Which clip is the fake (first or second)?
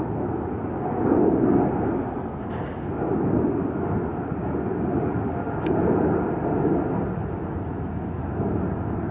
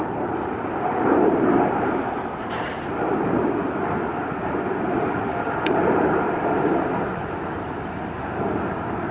second